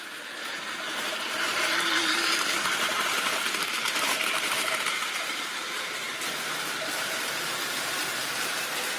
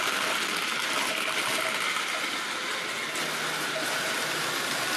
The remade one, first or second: first